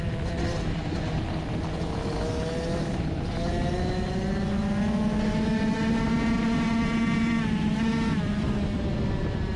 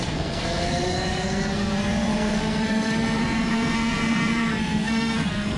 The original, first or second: first